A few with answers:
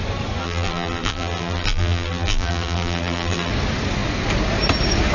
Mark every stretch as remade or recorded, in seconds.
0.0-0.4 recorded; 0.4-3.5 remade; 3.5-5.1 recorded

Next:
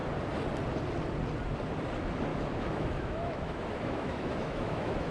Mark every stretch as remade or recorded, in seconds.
0.0-2.3 recorded; 2.3-5.1 remade

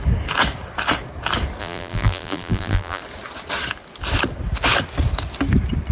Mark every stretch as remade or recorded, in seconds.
0.0-1.6 recorded; 1.6-3.0 remade; 3.0-5.9 recorded

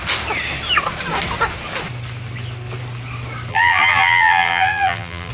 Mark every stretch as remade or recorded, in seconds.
0.0-3.5 recorded; 3.5-5.3 remade

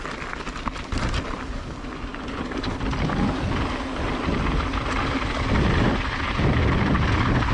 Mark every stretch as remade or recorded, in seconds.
0.0-7.5 recorded

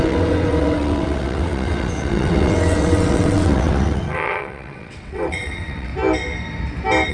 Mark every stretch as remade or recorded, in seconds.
0.0-5.9 remade; 5.9-7.1 recorded